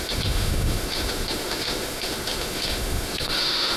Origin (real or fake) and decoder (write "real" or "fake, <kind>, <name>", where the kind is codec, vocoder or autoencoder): fake, autoencoder, DAC-VAE